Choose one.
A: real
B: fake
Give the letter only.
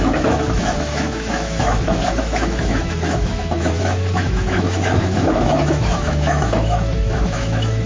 B